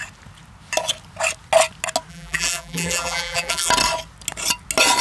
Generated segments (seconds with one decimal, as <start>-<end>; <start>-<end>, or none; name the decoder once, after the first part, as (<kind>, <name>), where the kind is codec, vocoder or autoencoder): 2.1-3.7 (vocoder, BigVGAN v2)